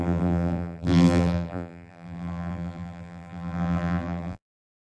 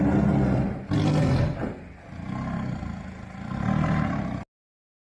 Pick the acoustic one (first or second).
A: second